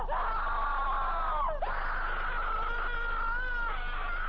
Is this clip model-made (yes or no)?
no